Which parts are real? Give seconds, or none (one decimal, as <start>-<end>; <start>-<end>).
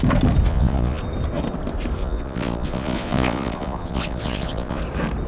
0.0-0.5; 1.0-2.0; 4.8-5.3